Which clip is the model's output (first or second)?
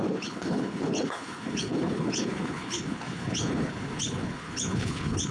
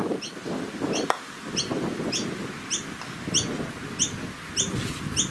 first